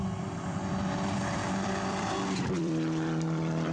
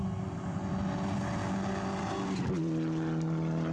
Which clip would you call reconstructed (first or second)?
first